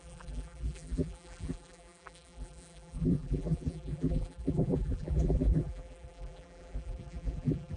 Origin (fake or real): fake